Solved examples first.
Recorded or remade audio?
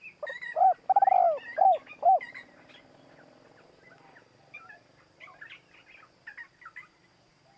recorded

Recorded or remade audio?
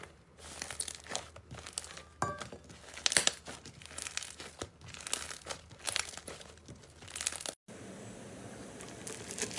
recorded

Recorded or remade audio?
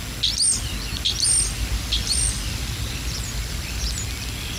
recorded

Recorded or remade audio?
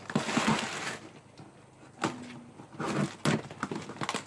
recorded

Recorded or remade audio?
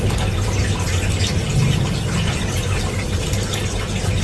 recorded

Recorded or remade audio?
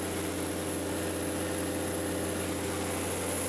recorded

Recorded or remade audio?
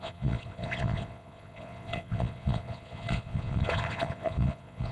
remade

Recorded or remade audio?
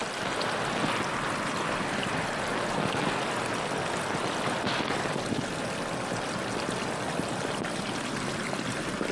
recorded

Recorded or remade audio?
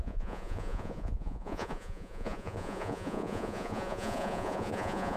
remade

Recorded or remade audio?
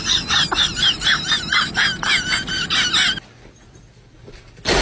recorded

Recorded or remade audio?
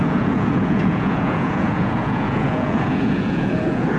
remade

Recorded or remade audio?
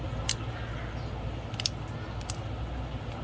recorded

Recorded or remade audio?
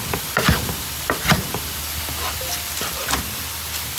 recorded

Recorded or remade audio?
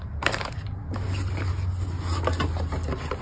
recorded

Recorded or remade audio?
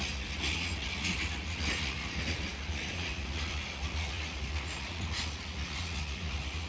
remade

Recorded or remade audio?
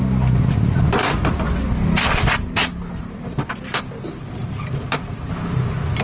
recorded